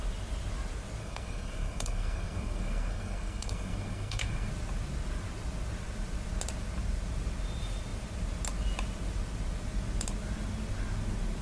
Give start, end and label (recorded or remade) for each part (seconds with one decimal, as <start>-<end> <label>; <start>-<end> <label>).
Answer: 0.0-1.0 recorded; 1.0-4.5 remade; 4.5-11.4 recorded